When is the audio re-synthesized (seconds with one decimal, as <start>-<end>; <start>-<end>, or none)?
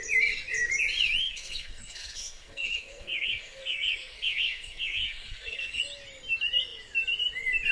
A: 1.2-5.8